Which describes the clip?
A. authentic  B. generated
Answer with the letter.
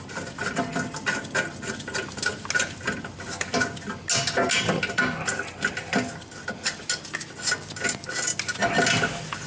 A